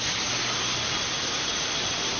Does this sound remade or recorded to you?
recorded